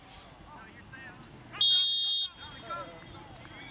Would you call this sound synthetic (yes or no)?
no